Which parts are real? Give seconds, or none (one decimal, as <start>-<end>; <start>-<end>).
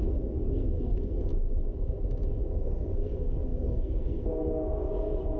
1.3-2.6